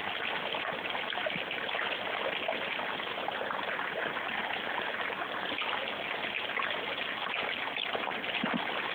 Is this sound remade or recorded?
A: recorded